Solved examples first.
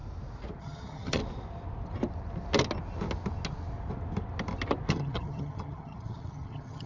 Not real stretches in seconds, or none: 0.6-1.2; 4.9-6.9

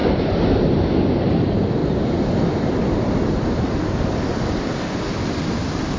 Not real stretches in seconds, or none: none